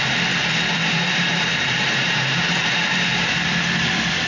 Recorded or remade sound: remade